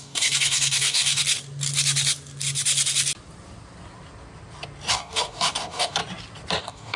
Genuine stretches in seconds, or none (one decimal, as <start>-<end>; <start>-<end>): 1.2-4.9; 6.0-6.6